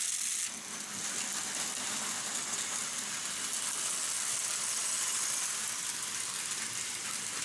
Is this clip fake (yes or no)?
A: no